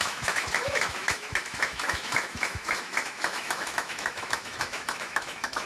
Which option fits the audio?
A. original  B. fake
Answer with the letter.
B